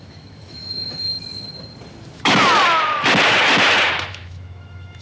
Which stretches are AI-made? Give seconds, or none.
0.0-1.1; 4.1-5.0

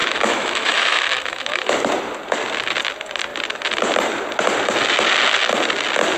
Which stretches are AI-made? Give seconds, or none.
0.0-1.7

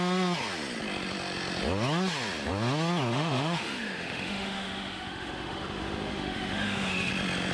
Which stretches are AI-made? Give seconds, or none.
3.1-7.1

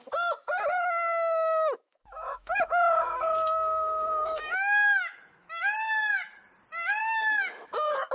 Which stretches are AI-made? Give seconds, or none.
0.7-5.6; 7.0-8.1